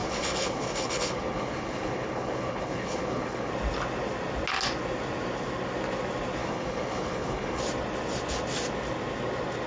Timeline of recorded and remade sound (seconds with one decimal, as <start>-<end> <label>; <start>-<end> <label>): 0.0-3.5 remade; 3.5-6.4 recorded; 6.4-7.6 remade; 7.6-9.7 recorded